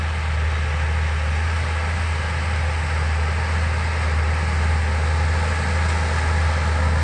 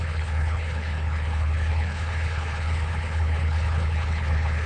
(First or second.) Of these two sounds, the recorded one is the first